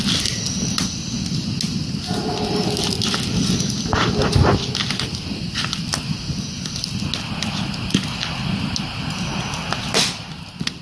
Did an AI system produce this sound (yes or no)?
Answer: no